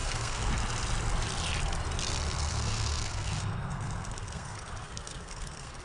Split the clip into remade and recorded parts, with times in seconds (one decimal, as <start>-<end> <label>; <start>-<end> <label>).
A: 0.0-0.5 remade; 0.5-2.5 recorded; 2.5-5.8 remade